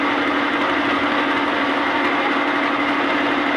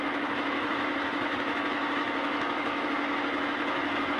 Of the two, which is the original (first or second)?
first